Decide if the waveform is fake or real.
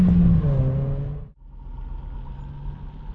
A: real